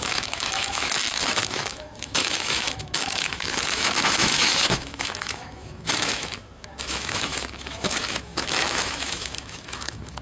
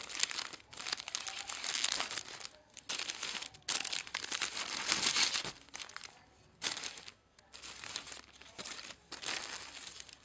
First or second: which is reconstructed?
first